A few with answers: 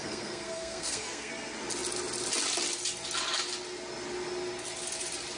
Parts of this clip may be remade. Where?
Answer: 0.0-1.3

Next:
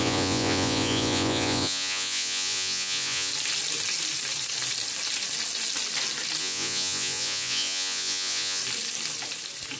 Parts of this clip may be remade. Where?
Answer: 0.0-3.3; 6.4-8.6

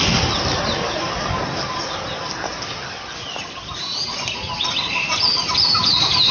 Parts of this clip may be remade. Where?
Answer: none

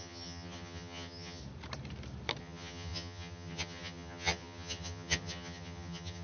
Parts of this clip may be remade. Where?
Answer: 0.0-1.4; 2.4-6.2

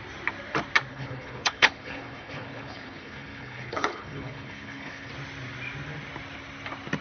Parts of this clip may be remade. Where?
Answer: 0.9-5.1

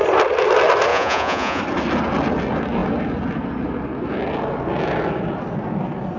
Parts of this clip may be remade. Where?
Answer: 0.9-1.6

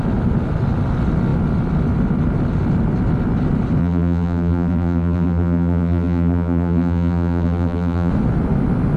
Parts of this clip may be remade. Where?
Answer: 3.8-8.1

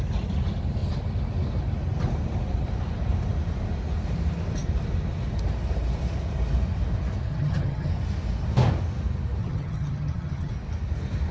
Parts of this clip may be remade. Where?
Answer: 7.3-7.9; 9.4-10.5